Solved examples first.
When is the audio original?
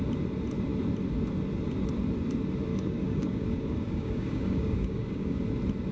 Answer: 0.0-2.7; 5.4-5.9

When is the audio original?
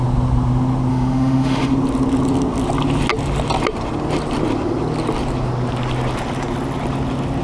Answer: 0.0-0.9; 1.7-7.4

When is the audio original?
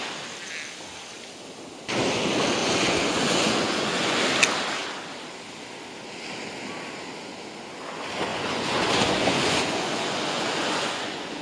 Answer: 0.0-2.6; 4.2-8.3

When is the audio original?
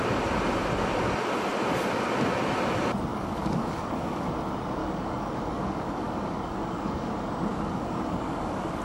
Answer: 0.0-3.1; 4.3-4.8; 7.1-7.5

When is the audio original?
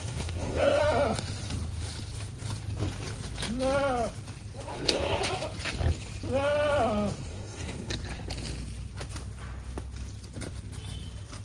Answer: 0.8-4.7; 5.2-7.3; 7.9-11.4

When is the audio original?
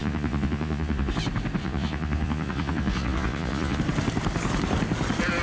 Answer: 1.1-1.6; 3.8-5.4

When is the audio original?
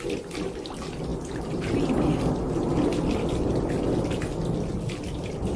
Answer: 0.0-5.6